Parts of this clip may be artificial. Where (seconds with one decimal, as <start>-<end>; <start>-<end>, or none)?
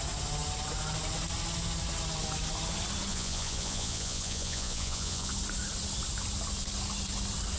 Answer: 3.1-5.3